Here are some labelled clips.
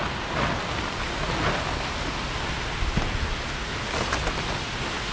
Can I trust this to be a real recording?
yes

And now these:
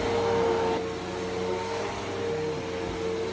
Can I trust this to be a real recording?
yes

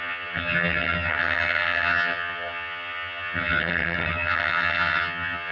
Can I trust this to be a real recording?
no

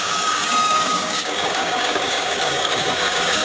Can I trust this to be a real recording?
no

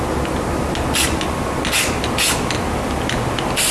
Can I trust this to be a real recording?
yes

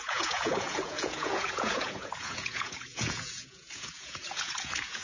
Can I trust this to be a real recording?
no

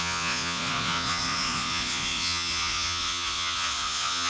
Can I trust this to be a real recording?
no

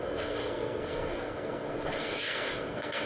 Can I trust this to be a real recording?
no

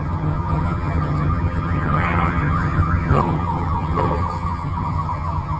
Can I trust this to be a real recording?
no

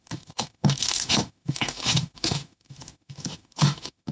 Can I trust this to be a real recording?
no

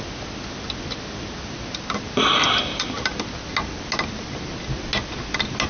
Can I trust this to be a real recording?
yes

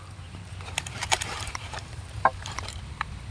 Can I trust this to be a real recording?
no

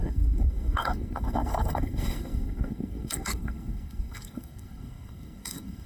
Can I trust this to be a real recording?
no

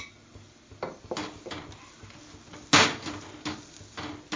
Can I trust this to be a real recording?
yes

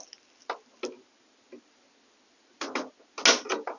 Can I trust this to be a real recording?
yes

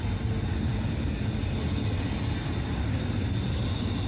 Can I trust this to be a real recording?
yes